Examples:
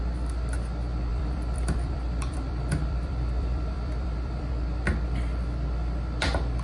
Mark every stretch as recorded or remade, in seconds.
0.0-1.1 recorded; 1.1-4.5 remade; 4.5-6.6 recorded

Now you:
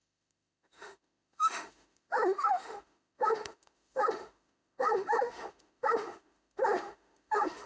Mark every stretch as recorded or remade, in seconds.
0.0-7.7 remade